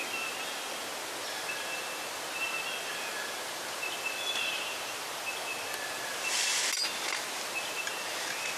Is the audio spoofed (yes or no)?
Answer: no